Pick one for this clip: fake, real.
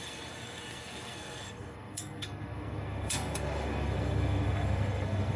fake